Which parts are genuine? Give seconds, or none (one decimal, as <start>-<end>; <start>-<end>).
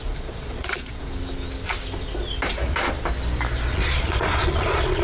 1.1-3.7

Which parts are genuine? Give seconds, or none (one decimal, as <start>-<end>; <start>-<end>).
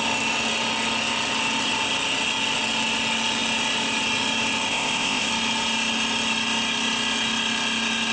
0.0-4.7; 5.3-8.1